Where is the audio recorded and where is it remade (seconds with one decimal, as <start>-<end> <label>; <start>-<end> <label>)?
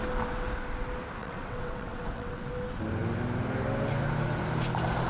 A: 0.0-1.2 recorded; 1.2-2.5 remade; 2.5-5.1 recorded